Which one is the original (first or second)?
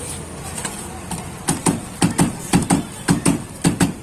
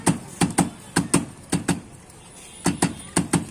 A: second